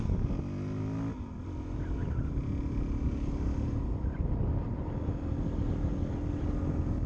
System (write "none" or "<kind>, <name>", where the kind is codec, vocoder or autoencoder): none